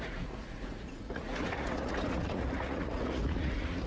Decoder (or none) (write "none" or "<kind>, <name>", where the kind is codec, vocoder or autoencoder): vocoder, Vocos